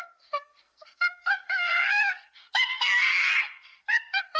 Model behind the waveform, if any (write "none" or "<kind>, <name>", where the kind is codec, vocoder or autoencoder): codec, SNAC